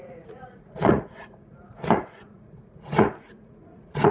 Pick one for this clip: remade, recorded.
remade